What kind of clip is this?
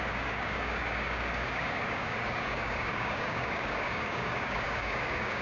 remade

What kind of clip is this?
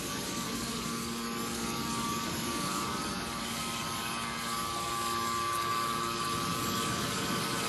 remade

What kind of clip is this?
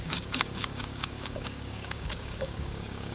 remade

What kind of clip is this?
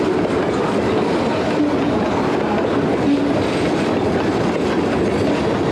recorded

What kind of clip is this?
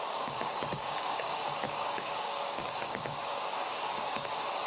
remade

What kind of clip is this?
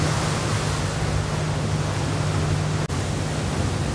recorded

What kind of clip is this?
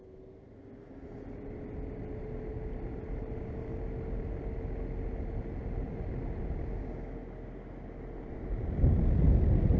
recorded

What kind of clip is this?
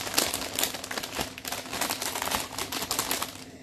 recorded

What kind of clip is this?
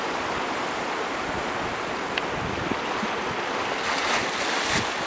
recorded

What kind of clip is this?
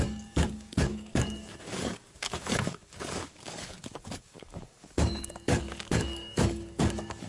remade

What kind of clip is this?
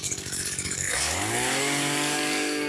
remade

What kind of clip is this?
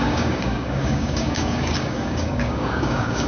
remade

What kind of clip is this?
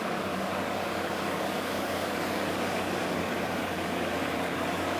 remade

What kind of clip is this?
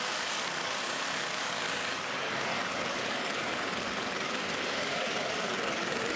remade